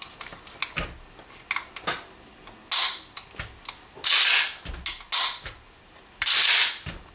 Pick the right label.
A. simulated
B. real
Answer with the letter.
B